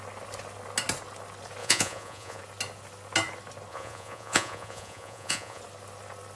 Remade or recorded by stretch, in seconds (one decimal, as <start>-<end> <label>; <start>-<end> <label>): 0.0-1.6 recorded; 1.6-2.4 remade; 2.4-3.7 recorded; 3.7-5.6 remade; 5.6-6.4 recorded